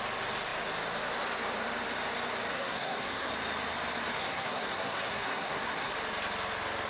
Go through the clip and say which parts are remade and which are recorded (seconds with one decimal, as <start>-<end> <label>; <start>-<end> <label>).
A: 0.0-2.5 recorded; 2.5-3.3 remade; 3.3-4.1 recorded; 4.1-5.9 remade; 5.9-6.9 recorded